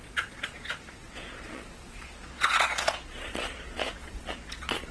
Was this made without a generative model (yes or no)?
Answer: no